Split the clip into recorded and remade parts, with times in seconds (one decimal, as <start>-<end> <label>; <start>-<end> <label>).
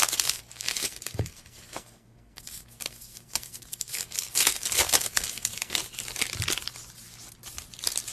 0.0-5.8 remade; 5.8-8.1 recorded